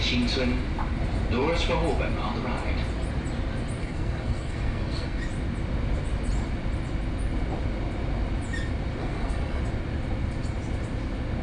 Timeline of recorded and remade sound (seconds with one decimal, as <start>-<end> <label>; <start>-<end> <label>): 0.0-3.8 recorded; 3.8-5.2 remade; 5.2-9.0 recorded; 9.0-9.6 remade; 9.6-11.4 recorded